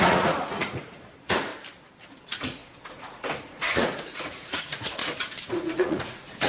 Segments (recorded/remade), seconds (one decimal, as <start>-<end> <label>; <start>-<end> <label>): 0.0-1.5 remade; 1.5-2.2 recorded; 2.2-5.0 remade; 5.0-5.5 recorded; 5.5-6.5 remade